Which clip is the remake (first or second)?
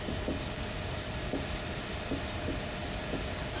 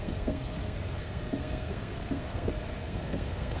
second